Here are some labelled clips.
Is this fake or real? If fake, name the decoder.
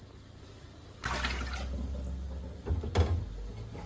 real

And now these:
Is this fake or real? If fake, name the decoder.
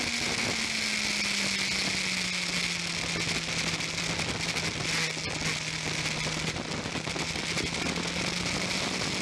real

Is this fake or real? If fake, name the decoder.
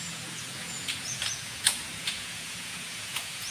fake, vocoder, Vocos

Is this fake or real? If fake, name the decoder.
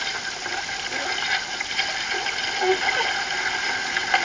real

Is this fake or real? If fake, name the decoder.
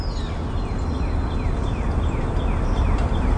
real